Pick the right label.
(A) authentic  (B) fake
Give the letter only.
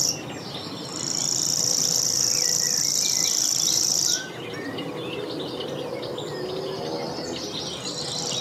A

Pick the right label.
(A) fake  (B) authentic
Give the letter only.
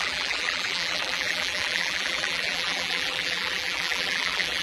A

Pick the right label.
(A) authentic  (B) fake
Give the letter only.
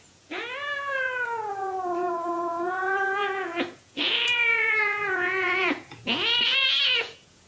B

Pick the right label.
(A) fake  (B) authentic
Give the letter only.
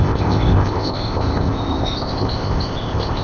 A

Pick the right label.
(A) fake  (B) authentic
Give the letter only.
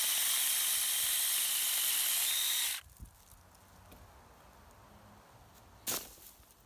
B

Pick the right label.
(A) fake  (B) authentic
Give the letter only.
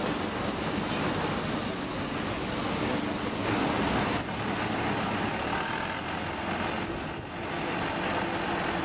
B